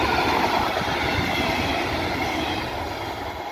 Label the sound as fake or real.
real